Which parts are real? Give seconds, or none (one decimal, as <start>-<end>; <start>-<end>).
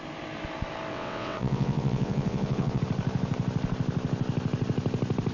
0.0-0.9; 2.8-5.3